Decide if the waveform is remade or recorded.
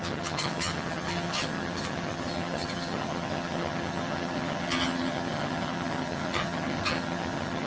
remade